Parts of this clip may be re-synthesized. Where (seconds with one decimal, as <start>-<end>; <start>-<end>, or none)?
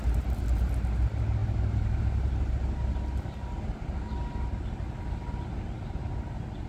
none